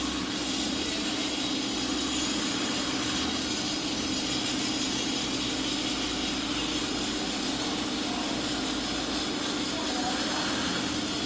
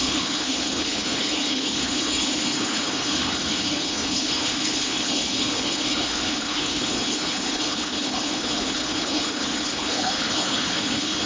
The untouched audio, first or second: first